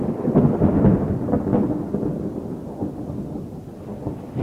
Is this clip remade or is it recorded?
recorded